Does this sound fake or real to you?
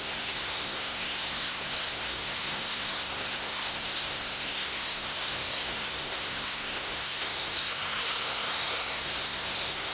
fake